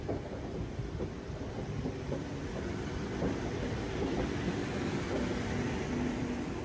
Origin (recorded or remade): remade